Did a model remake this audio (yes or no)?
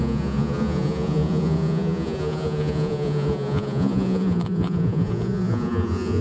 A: yes